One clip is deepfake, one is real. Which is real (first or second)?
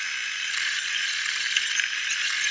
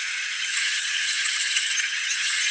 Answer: first